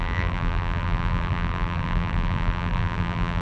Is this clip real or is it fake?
fake